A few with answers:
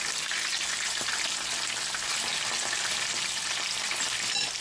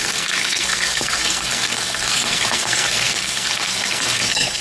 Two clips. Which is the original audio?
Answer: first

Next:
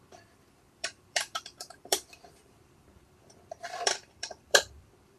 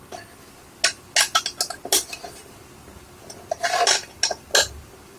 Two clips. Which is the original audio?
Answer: second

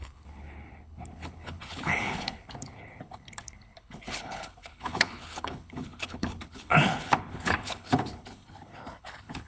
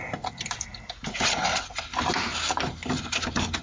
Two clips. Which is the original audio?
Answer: second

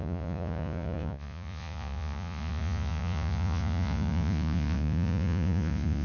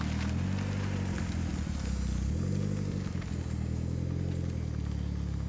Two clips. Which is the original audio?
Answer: second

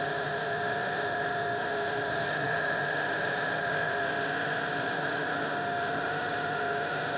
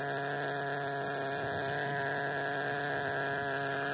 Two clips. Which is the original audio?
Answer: second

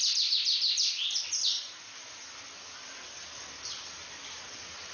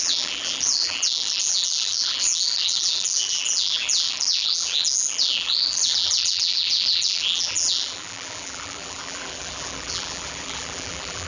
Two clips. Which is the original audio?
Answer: first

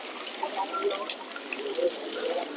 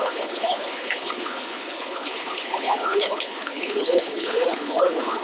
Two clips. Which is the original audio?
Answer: first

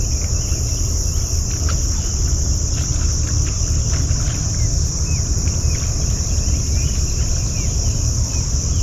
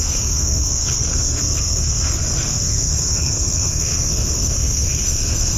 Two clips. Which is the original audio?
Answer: first